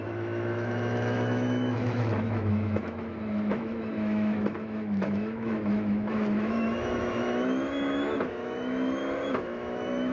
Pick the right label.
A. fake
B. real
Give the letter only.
A